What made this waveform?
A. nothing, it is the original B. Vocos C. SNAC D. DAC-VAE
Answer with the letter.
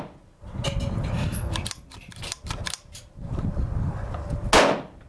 A